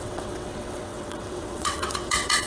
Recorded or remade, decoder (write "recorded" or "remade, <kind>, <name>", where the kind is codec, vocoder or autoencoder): remade, vocoder, WaveNeXt